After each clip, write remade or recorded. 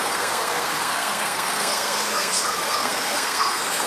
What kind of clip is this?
remade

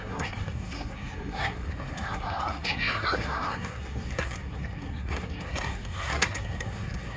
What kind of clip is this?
remade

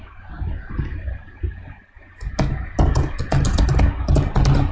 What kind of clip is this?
recorded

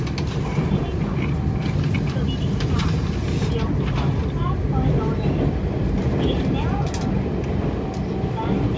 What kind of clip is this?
recorded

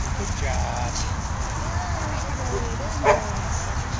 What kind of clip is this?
recorded